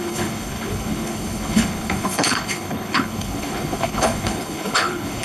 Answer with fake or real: fake